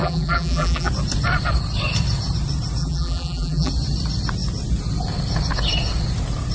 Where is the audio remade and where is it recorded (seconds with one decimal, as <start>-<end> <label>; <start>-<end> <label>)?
0.0-0.9 remade; 0.9-2.8 recorded; 2.8-3.7 remade; 3.7-6.5 recorded